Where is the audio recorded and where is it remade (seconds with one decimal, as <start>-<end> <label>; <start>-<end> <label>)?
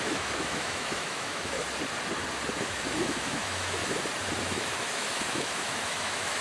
0.0-1.6 remade; 1.6-2.6 recorded; 2.6-3.8 remade; 3.8-4.4 recorded; 4.4-6.4 remade